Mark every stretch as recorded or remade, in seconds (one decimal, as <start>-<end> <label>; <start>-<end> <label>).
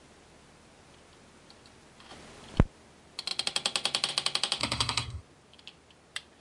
0.0-4.6 recorded; 4.6-5.2 remade; 5.2-6.4 recorded